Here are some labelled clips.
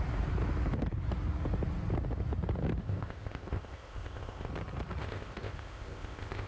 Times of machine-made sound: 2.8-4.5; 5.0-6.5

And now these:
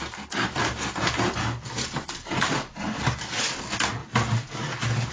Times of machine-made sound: none